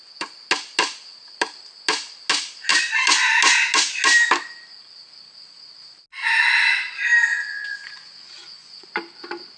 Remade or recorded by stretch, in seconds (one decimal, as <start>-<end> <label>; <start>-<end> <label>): 0.0-7.3 recorded; 7.3-8.9 remade; 8.9-9.6 recorded